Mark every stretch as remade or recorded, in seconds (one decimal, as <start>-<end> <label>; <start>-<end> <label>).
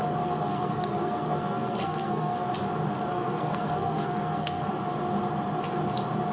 0.0-2.5 remade; 2.5-3.1 recorded; 3.1-4.7 remade; 4.7-6.3 recorded